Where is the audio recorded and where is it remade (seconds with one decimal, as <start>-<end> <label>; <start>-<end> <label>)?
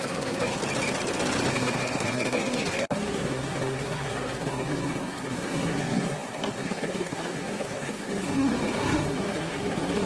0.0-0.6 remade; 0.6-1.5 recorded; 1.5-10.1 remade